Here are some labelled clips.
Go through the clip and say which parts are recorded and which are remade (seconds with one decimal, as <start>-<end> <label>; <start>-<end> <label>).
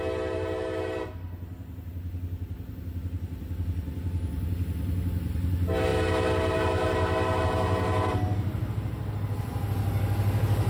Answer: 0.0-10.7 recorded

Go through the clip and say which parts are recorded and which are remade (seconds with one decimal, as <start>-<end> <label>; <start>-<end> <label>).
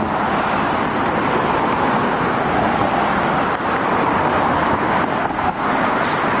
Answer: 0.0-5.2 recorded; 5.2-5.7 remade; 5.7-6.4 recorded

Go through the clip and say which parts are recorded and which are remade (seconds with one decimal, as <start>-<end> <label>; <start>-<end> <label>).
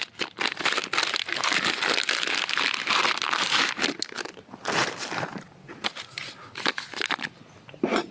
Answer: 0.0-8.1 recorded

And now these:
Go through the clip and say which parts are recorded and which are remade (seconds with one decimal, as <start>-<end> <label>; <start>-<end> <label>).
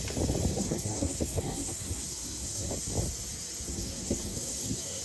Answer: 0.0-0.5 recorded; 0.5-2.7 remade; 2.7-3.7 recorded; 3.7-5.0 remade